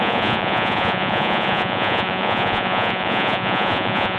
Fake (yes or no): yes